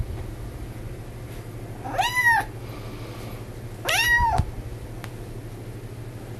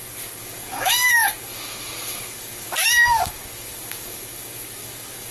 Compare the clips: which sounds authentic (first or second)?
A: first